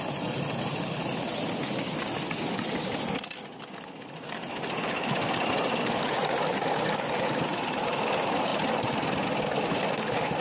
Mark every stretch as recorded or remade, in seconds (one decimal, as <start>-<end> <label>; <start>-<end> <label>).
0.0-10.4 recorded